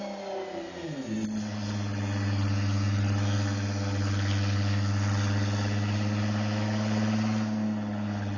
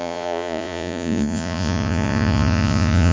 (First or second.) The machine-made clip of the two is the second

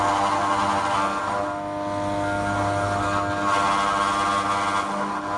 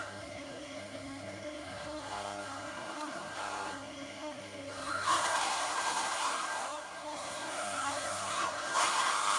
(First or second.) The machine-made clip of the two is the second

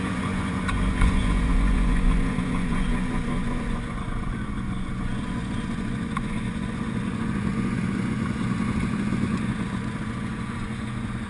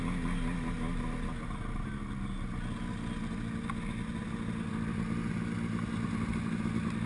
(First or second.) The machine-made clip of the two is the first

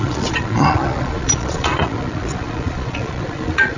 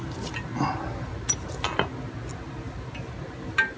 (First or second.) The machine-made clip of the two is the first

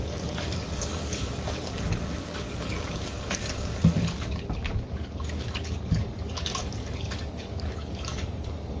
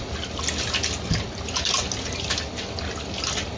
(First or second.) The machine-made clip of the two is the first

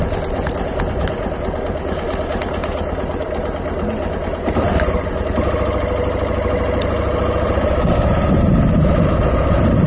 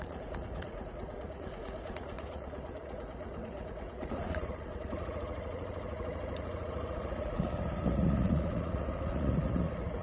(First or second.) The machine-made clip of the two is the second